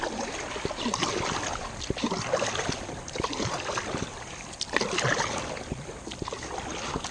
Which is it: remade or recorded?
recorded